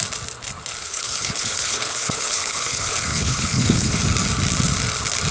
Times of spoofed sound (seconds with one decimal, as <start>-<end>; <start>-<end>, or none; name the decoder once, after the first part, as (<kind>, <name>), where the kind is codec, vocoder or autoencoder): 0.8-4.0 (codec, HILCodec)